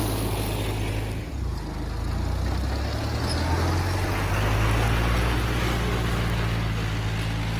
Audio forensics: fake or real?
real